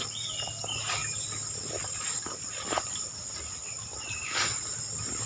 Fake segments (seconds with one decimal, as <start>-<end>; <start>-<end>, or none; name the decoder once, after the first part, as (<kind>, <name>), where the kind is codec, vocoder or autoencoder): none